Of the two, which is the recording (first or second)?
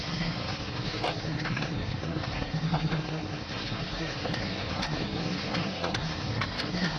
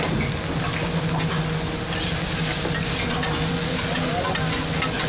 second